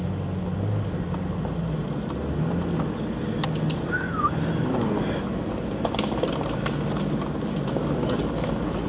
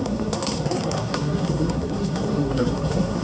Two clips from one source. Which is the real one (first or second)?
first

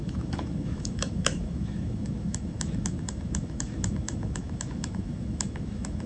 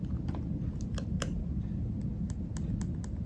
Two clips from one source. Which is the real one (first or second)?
second